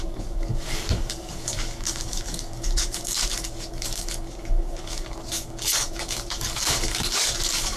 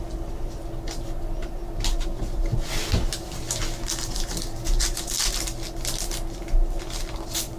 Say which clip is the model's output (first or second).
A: first